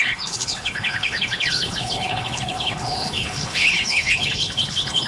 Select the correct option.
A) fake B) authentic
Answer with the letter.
A